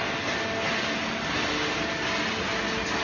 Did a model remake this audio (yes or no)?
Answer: no